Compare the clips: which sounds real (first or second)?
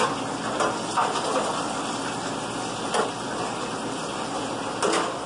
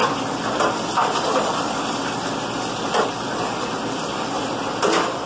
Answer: first